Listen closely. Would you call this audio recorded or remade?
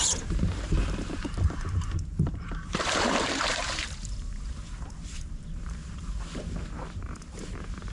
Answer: remade